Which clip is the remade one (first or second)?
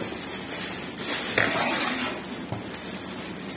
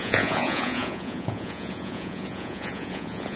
second